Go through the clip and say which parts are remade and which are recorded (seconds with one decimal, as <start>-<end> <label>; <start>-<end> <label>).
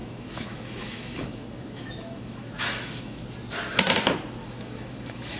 0.0-3.2 remade; 3.2-4.4 recorded; 4.4-5.4 remade